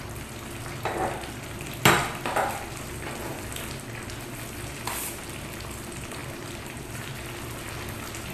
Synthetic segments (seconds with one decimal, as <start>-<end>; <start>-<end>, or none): 6.2-7.1